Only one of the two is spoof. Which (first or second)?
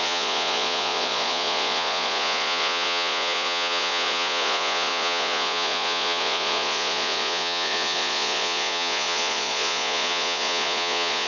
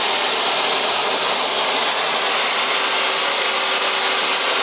first